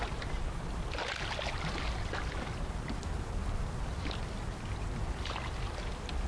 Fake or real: real